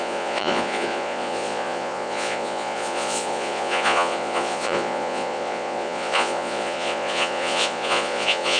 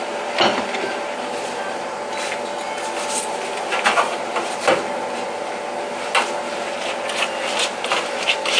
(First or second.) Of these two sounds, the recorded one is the second